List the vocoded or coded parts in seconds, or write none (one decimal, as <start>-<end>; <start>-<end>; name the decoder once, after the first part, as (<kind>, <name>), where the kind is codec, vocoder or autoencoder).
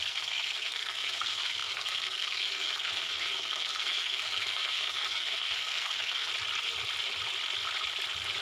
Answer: 0.0-6.3 (codec, SNAC)